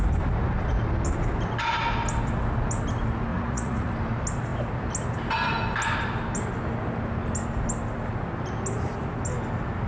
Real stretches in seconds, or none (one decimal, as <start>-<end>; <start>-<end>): 0.0-3.3; 3.9-9.9